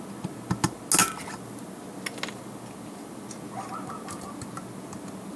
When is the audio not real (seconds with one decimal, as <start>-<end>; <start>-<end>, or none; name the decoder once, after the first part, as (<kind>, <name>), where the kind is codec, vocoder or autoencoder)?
none